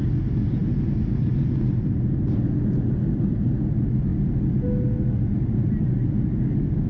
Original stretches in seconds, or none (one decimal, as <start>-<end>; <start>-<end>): 0.0-6.9